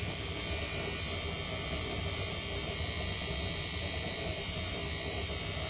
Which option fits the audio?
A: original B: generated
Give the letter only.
A